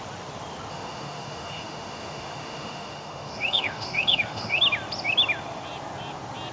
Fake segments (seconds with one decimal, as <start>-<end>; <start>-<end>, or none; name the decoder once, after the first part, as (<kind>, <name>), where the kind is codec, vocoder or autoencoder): 0.7-4.6 (autoencoder, DAC-VAE)